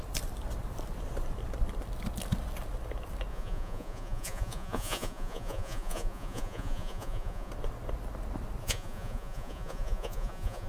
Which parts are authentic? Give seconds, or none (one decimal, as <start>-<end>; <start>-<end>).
0.0-3.3; 7.5-8.6